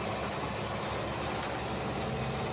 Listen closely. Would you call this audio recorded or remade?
recorded